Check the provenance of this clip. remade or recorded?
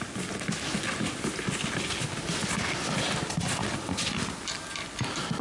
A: recorded